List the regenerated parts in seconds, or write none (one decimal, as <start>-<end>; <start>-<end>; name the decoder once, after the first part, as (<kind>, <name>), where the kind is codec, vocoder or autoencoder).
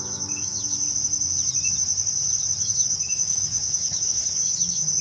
0.0-0.6 (autoencoder, DAC-VAE); 2.6-5.0